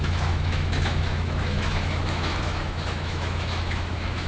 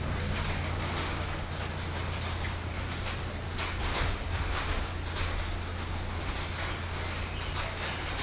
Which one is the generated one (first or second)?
first